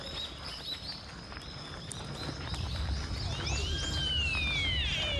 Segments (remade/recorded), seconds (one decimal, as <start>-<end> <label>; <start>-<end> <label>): 0.0-5.2 recorded